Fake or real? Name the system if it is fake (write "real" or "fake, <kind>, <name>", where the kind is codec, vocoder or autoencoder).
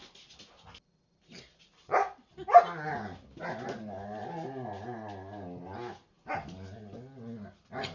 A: real